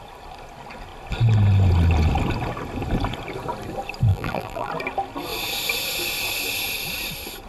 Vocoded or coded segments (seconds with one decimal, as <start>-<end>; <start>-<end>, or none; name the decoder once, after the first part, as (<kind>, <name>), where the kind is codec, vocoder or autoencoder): 4.1-4.7 (vocoder, BigVGAN v2)